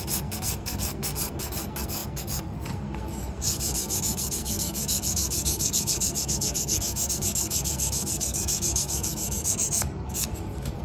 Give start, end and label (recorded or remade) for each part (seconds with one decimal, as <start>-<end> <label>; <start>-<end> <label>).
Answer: 0.0-10.8 remade